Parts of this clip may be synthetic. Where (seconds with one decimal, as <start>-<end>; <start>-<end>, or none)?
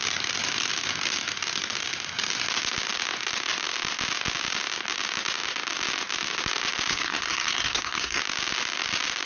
6.9-8.2